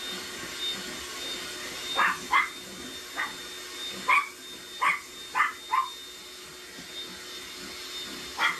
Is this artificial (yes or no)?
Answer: no